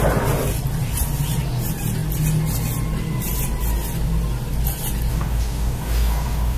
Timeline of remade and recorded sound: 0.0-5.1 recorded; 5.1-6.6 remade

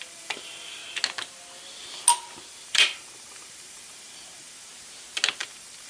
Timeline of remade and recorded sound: 0.0-0.8 remade; 0.8-2.5 recorded; 2.5-4.7 remade; 4.7-5.4 recorded; 5.4-5.9 remade